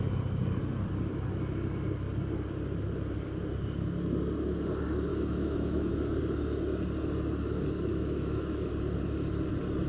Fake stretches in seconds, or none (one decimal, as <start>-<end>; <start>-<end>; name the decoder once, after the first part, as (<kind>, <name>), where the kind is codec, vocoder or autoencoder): 5.1-5.9 (autoencoder, DAC-VAE); 7.9-8.7